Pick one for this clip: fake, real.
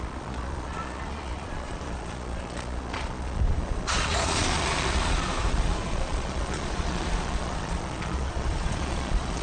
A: fake